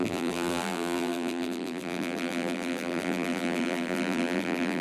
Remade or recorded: remade